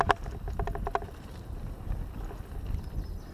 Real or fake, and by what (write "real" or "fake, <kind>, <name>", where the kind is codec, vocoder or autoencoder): real